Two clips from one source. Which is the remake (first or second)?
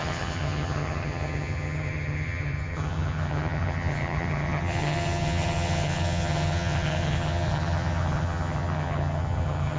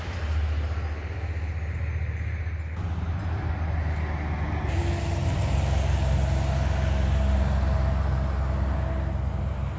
first